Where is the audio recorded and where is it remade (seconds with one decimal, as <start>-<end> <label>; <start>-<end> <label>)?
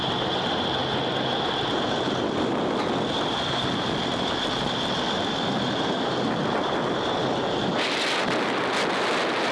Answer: 0.0-9.5 recorded